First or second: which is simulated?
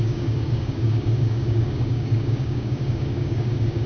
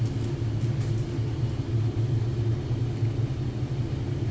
first